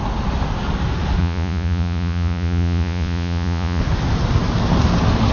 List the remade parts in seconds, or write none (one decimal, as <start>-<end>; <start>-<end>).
1.2-3.8

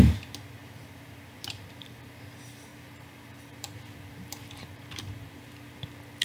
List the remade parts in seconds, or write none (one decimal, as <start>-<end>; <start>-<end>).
0.6-2.0; 2.7-5.4

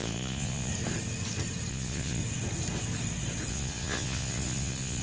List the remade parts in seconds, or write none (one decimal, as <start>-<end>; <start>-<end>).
0.0-0.7; 1.7-2.2; 3.5-5.0

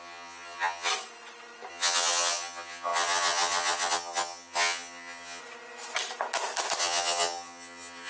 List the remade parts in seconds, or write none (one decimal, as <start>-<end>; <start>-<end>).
0.0-0.9; 1.7-5.4; 6.8-8.1

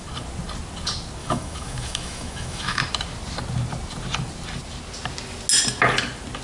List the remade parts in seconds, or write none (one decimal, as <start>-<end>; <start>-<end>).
1.2-2.8

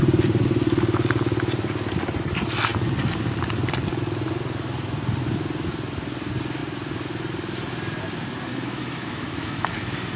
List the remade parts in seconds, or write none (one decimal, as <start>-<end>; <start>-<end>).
8.5-9.7

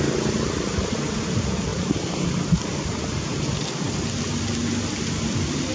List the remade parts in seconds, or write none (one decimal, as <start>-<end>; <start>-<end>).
none

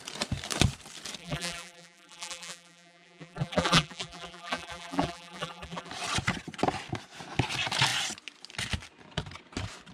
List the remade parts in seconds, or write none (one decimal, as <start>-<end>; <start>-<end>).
1.2-5.9